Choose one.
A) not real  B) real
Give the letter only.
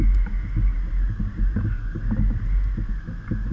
B